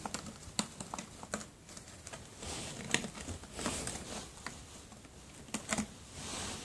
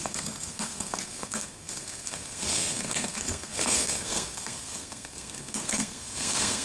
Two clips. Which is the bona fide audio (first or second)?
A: first